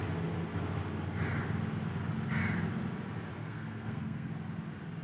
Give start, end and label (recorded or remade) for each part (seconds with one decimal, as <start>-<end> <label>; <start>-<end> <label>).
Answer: 0.0-3.4 recorded; 3.4-4.3 remade; 4.3-5.0 recorded